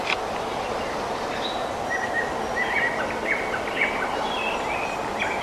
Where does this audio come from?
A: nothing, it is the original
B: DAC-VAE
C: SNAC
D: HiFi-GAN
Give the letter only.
A